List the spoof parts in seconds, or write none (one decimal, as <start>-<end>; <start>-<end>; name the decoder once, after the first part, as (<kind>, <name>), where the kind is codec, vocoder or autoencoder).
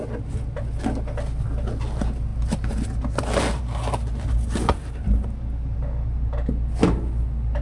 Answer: none